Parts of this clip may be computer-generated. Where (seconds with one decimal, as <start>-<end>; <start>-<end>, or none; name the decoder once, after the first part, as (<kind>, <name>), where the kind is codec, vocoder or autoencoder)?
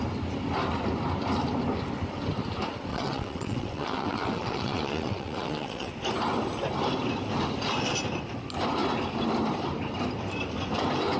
2.9-5.9 (vocoder, WaveNeXt)